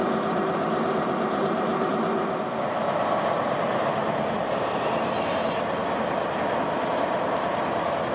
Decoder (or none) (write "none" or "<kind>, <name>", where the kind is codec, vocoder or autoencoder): none